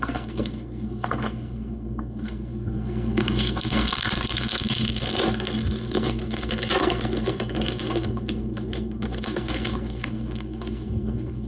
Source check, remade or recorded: remade